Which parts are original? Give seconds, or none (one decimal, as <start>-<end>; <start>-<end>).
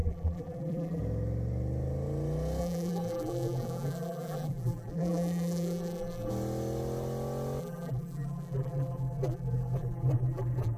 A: 1.0-2.6; 6.3-7.6